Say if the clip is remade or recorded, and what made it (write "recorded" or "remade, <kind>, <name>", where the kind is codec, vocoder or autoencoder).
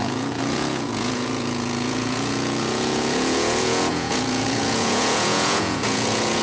remade, vocoder, Vocos